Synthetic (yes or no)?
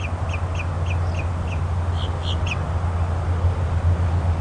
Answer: no